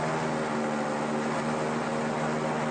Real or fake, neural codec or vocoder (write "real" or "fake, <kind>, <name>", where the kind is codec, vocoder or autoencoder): real